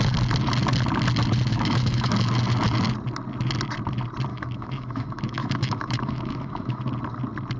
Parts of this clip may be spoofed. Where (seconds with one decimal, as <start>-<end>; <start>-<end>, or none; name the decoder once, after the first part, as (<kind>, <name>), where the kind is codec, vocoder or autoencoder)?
1.5-2.1 (autoencoder, DAC-VAE); 4.3-6.8